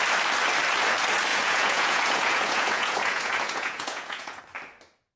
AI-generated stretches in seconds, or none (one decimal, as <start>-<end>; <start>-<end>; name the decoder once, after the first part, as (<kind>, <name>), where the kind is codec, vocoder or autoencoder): 1.3-4.4 (vocoder, Vocos)